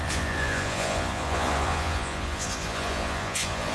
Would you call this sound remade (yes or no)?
yes